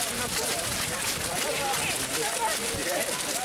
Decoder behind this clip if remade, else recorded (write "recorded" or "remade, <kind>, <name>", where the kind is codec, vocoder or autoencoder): recorded